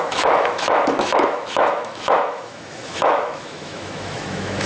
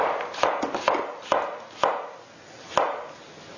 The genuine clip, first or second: second